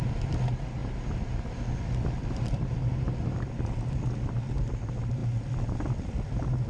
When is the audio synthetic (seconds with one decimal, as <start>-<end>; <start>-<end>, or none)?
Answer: none